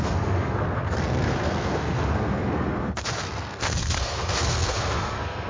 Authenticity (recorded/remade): remade